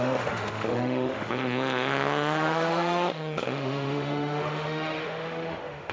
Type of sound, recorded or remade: remade